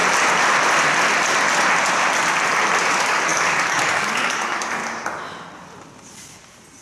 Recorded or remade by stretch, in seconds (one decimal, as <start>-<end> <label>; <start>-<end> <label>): 0.0-2.9 recorded; 2.9-4.8 remade; 4.8-6.8 recorded